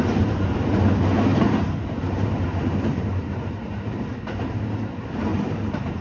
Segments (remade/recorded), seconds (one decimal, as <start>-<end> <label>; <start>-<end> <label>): 0.0-1.3 recorded; 1.3-4.0 remade; 4.0-5.3 recorded; 5.3-6.0 remade